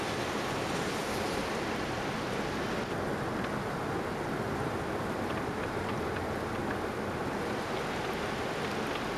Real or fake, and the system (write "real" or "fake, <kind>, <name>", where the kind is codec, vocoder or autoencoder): real